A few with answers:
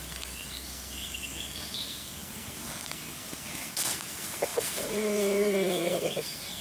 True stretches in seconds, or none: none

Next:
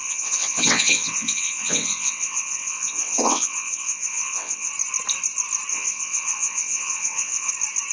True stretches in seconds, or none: 4.7-5.7; 7.5-7.9

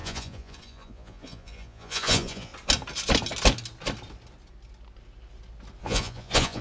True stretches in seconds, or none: 2.5-5.8

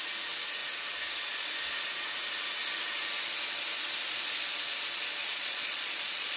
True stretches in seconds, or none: 0.0-5.2

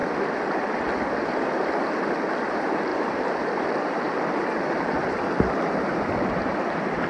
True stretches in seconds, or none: 0.0-2.5

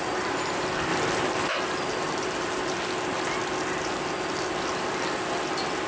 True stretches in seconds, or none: 0.0-5.9